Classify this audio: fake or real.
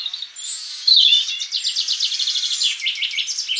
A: real